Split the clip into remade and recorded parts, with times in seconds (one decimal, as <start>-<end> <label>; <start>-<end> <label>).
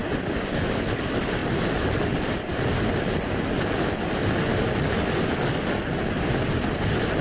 0.0-7.2 recorded